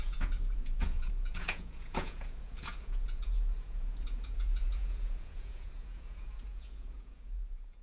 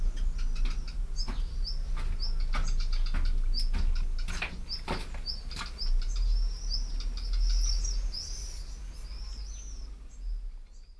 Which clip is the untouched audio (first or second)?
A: second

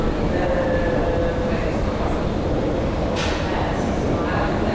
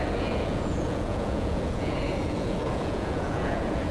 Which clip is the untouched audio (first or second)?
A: first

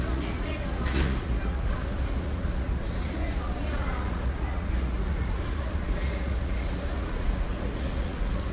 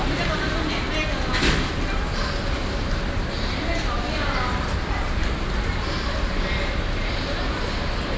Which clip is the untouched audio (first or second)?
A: second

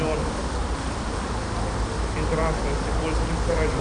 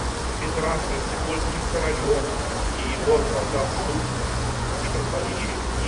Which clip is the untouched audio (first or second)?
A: first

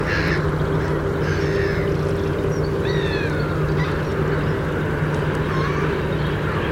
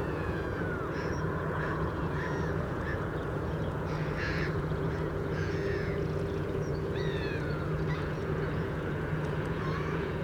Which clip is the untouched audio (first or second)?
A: first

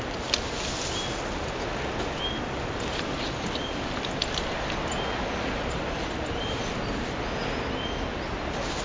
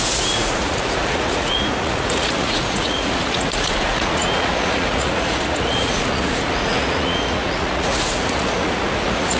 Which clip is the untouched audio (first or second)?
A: first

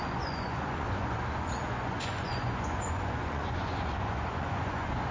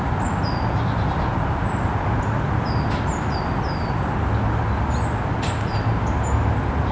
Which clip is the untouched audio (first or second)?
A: second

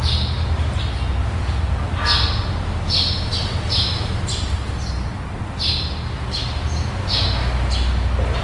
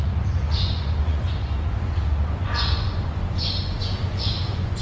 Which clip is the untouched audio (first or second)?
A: first